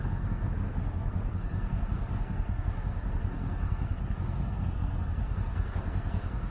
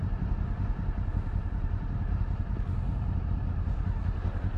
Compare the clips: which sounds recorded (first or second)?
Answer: second